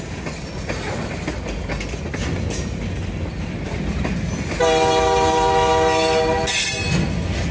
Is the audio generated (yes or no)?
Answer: no